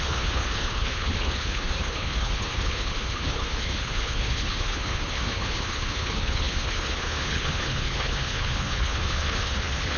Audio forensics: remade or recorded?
remade